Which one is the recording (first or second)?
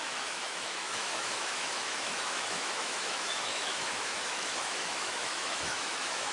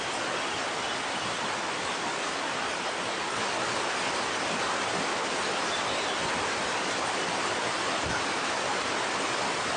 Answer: second